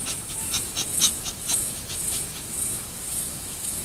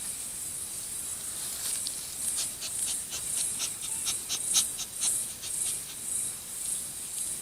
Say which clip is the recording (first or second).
second